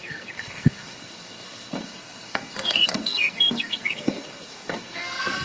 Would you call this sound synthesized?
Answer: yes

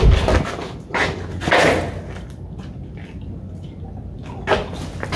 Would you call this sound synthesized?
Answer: no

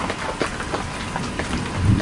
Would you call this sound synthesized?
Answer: no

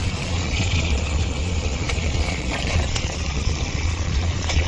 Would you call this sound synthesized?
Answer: yes